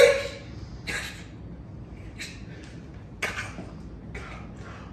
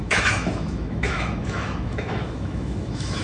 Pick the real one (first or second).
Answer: first